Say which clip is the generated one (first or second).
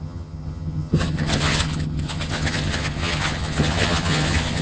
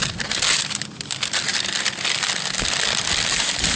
first